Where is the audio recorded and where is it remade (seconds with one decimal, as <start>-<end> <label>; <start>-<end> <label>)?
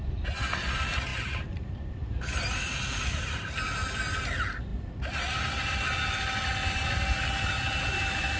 0.0-8.4 recorded